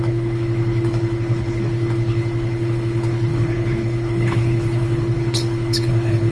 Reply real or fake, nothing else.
fake